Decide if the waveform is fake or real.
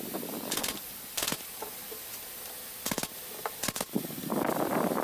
real